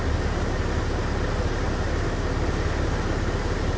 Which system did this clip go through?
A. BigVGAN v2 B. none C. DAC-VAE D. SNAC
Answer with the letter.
B